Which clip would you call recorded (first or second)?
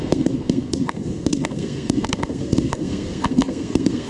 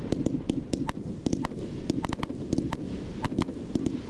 second